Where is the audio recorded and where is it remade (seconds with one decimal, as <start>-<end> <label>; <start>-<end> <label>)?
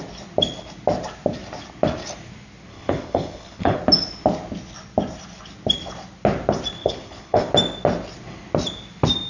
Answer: 0.0-2.7 recorded; 2.7-3.8 remade; 3.8-6.8 recorded; 6.8-7.5 remade; 7.5-9.3 recorded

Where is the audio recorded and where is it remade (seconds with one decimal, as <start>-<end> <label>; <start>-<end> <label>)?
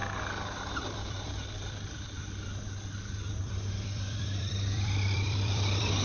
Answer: 0.0-0.7 recorded; 0.7-2.5 remade; 2.5-3.3 recorded; 3.3-6.0 remade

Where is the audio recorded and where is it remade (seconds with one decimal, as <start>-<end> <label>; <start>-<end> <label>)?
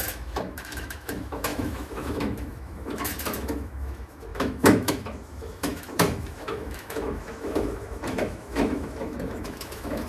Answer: 0.0-10.1 remade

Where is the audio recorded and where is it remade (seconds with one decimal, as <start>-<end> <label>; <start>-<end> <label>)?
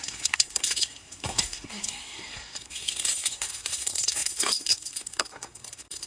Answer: 0.0-6.1 remade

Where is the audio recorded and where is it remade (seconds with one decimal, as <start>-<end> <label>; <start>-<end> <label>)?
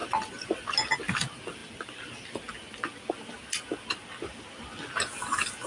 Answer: 0.0-5.7 recorded